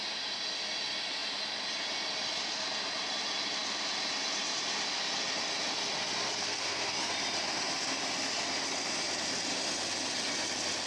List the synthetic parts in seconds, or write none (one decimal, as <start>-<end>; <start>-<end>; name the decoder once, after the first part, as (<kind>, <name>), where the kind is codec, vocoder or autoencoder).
6.4-7.1 (codec, SNAC)